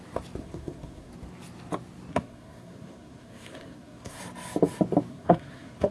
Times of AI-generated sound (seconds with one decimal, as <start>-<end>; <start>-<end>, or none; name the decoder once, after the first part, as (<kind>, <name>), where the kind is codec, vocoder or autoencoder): 0.4-1.1 (codec, SNAC); 2.1-4.2; 5.1-5.9